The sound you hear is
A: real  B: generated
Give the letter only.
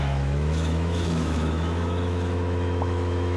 B